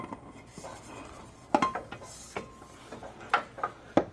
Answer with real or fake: real